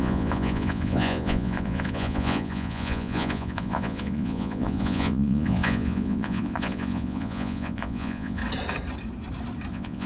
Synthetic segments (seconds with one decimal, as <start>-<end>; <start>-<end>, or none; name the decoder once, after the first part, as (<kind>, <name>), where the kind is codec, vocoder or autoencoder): 0.0-8.4 (vocoder, Vocos); 9.7-10.1